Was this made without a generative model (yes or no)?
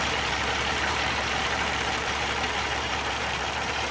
no